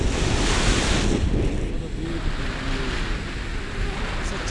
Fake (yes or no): no